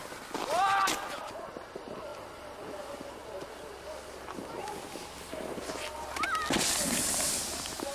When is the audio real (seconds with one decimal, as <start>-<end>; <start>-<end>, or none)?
0.0-1.5; 3.2-6.2